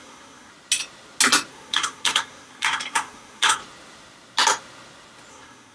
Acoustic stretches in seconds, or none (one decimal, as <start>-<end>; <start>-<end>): 0.5-1.5; 3.6-5.3